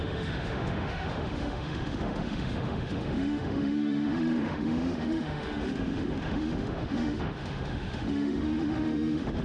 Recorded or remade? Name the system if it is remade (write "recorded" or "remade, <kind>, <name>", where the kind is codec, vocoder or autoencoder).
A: remade, autoencoder, DAC-VAE